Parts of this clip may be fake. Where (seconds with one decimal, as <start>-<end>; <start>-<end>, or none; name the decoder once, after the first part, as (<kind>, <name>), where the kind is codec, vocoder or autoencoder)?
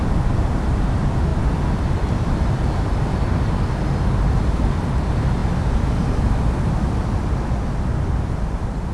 none